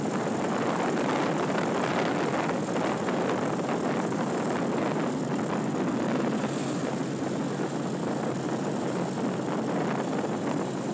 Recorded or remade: recorded